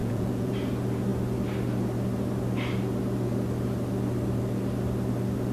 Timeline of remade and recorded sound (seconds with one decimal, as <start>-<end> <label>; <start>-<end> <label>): 0.0-0.5 remade; 0.5-5.5 recorded